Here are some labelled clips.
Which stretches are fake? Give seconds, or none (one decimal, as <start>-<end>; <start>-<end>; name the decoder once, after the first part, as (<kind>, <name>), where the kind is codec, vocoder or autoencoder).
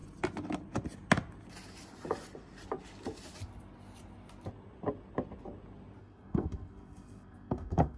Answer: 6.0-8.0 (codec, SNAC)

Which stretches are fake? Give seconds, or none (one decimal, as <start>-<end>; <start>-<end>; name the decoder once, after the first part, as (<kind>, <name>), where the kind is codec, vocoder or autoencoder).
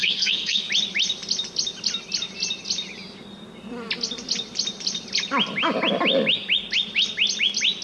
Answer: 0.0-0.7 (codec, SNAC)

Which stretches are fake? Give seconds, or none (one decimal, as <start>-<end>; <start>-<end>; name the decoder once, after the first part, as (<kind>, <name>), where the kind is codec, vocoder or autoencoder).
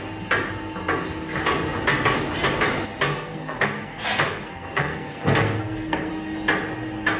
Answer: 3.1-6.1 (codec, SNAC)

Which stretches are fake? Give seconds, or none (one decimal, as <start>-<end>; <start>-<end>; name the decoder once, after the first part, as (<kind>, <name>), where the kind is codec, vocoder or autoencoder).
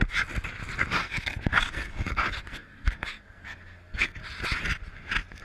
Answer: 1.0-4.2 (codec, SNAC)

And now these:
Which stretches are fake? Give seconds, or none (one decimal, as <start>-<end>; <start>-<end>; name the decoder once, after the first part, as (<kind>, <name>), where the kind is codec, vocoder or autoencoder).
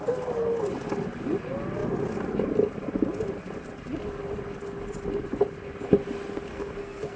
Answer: 6.5-7.2 (codec, SNAC)